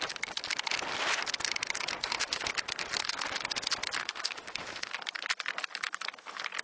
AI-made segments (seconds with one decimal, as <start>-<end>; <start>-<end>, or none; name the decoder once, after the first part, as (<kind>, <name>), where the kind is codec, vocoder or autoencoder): 2.0-2.5 (autoencoder, DAC-VAE); 4.0-4.9

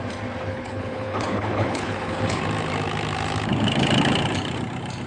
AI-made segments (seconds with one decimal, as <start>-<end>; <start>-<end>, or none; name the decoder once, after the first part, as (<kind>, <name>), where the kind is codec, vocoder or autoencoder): 0.5-2.4 (codec, HILCodec)

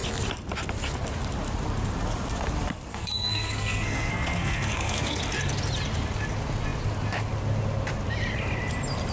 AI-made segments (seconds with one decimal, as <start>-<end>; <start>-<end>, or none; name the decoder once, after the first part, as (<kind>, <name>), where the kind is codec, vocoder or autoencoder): 2.9-5.2 (codec, SNAC)

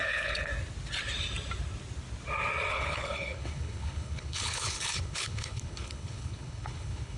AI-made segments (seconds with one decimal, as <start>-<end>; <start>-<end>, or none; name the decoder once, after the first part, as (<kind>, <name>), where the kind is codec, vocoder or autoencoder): 0.0-0.5 (codec, HILCodec); 2.7-7.2

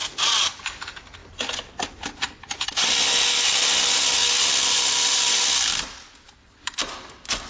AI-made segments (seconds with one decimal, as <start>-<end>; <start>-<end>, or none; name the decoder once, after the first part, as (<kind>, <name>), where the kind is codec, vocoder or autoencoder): none

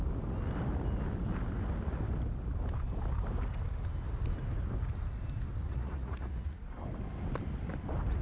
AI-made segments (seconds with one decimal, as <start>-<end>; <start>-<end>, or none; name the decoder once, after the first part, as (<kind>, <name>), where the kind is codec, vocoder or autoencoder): 5.6-6.6 (vocoder, Vocos)

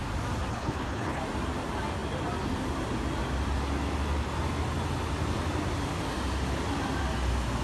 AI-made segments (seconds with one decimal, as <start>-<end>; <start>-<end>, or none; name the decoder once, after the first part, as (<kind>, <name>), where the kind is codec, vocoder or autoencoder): 0.5-1.2 (codec, HILCodec)

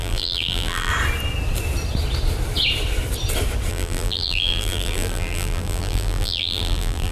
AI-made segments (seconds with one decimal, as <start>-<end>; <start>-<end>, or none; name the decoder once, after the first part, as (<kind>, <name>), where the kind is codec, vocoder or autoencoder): 0.0-0.9 (vocoder, BigVGAN v2); 3.7-7.1